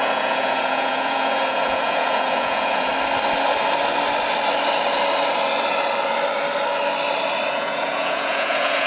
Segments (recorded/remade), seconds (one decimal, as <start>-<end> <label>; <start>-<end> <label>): 0.0-2.9 remade; 2.9-7.5 recorded; 7.5-8.9 remade